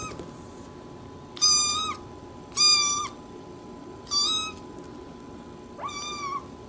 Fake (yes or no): no